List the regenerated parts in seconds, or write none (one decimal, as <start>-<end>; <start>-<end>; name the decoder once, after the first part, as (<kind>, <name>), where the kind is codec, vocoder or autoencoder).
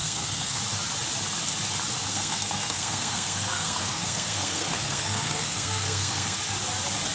0.0-0.6 (codec, SNAC); 2.1-6.4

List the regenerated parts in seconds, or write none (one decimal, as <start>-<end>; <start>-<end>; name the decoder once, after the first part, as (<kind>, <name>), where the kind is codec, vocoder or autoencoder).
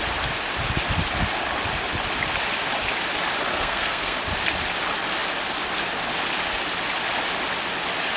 3.5-4.2 (codec, SNAC)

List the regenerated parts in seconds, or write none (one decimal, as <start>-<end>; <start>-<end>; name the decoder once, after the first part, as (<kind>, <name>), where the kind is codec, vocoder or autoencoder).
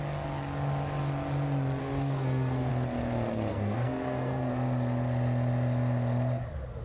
1.8-2.7 (codec, SNAC); 3.5-4.5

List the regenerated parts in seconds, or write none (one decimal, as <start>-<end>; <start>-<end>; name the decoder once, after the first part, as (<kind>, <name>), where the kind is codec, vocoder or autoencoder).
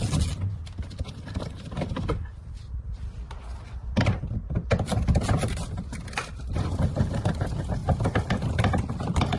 none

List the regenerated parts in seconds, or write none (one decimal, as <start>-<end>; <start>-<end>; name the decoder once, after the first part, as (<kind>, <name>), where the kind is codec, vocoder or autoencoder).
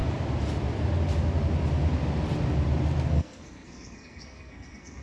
3.0-5.0 (codec, SNAC)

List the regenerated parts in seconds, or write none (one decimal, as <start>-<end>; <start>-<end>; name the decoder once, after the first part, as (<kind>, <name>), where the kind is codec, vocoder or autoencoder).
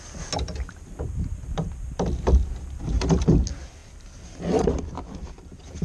none